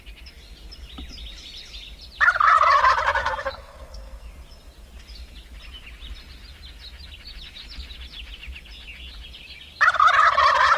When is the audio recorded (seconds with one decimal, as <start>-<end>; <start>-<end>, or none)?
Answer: 0.0-3.2; 4.3-10.8